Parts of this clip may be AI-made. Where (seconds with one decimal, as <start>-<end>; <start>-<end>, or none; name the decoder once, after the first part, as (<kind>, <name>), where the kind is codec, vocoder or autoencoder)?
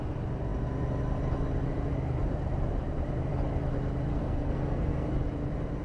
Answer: 4.1-5.1 (codec, SNAC)